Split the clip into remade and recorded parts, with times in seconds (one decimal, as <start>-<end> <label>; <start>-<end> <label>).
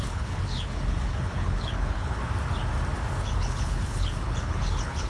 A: 0.0-2.2 remade; 2.2-3.2 recorded; 3.2-5.1 remade